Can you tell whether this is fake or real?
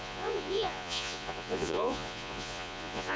fake